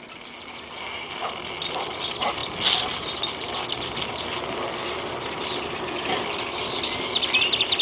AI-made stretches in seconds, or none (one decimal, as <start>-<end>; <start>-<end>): none